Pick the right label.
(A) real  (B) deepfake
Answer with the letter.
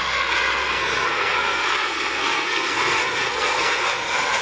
B